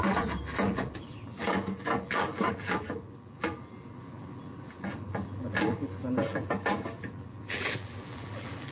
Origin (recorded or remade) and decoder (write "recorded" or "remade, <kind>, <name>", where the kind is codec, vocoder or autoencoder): remade, vocoder, BigVGAN v2